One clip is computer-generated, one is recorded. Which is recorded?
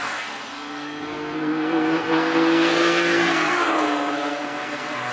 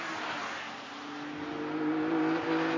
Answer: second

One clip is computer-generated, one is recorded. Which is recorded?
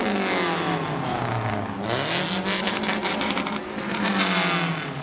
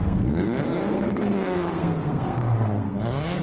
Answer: first